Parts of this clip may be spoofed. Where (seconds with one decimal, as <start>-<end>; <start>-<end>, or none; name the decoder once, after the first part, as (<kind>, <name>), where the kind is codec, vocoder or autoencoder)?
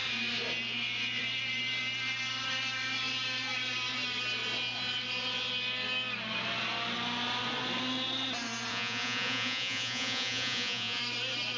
8.7-11.0 (vocoder, Vocos)